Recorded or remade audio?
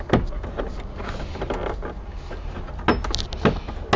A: recorded